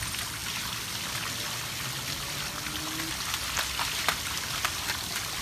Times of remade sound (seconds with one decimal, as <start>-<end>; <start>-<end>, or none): none